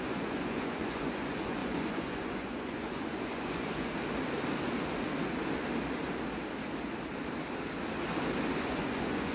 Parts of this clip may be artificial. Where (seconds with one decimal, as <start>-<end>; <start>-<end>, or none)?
0.0-3.9; 8.6-9.3